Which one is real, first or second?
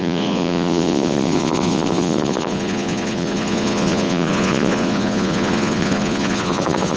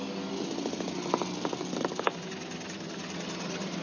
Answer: second